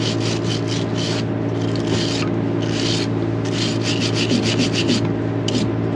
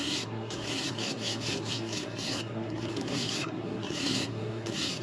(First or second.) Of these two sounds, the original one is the first